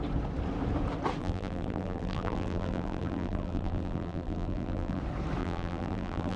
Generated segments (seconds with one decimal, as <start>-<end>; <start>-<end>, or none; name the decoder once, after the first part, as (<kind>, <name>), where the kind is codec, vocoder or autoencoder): 1.2-5.0 (vocoder, BigVGAN v2); 5.4-6.4